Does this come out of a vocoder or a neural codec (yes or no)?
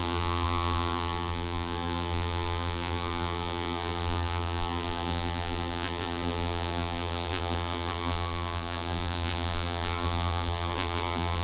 yes